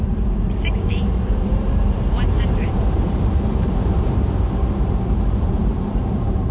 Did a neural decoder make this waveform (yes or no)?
yes